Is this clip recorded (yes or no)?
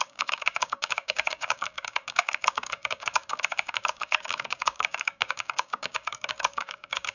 no